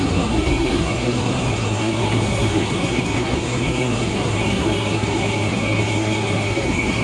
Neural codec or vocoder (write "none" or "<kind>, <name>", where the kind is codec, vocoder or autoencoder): codec, SNAC